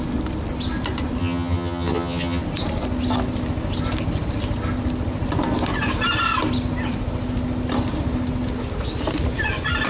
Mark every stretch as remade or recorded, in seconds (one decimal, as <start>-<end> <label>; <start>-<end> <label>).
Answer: 0.0-1.2 recorded; 1.2-2.4 remade; 2.4-9.9 recorded